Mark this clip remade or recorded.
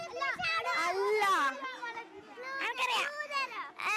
recorded